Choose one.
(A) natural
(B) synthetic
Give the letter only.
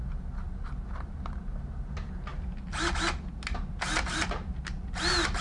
A